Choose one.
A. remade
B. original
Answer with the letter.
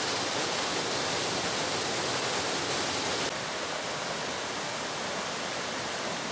B